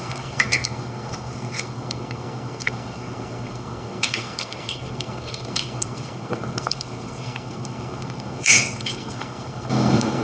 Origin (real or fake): fake